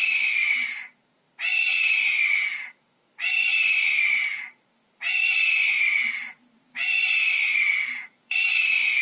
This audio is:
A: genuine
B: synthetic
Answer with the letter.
B